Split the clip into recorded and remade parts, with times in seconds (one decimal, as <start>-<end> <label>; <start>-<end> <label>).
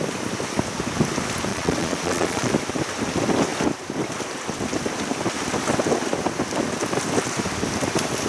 0.0-1.5 recorded; 1.5-2.5 remade; 2.5-8.3 recorded